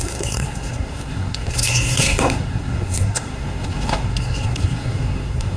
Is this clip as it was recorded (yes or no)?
no